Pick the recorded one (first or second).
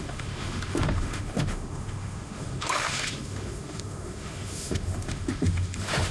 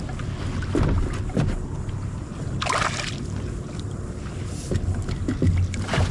second